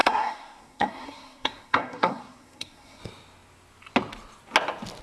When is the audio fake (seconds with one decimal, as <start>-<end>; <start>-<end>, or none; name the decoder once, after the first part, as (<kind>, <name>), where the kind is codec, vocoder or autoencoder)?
0.0-3.0 (codec, SNAC)